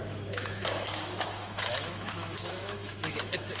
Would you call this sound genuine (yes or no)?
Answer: no